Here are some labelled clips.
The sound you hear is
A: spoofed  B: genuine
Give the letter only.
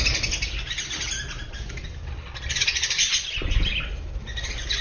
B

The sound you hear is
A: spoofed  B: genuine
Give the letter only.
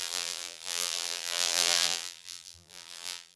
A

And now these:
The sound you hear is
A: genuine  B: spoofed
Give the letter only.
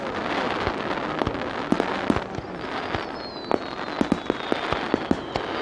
A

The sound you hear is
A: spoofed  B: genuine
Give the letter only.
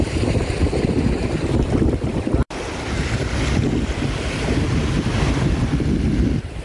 B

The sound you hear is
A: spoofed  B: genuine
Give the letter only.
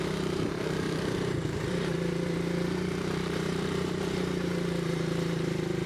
A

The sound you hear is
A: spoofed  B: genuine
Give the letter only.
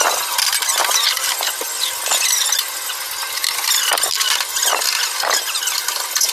B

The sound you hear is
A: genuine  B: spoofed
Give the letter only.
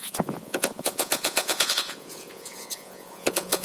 B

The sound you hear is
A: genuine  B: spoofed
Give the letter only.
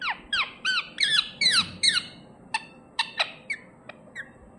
A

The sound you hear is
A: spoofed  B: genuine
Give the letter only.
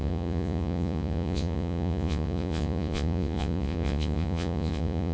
A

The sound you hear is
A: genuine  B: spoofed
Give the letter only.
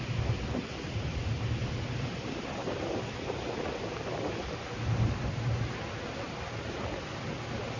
A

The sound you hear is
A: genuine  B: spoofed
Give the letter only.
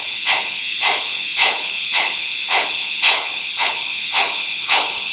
B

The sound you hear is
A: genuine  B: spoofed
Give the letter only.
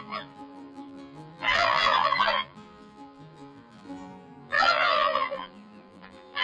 B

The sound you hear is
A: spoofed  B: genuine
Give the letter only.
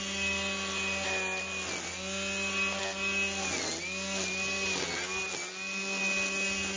B